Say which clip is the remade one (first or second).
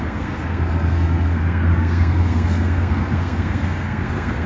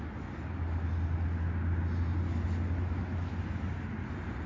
first